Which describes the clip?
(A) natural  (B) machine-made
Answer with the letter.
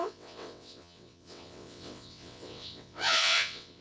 B